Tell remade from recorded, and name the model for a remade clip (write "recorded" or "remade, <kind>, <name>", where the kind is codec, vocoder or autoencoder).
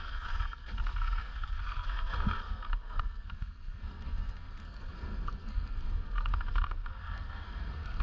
remade, codec, SNAC